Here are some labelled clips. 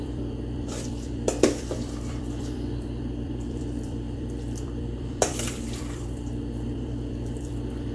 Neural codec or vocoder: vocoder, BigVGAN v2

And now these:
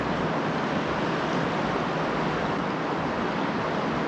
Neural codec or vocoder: none